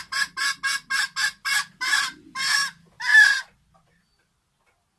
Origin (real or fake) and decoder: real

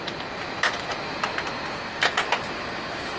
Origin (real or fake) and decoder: real